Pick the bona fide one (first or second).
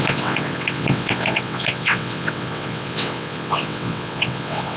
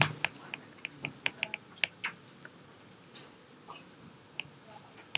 second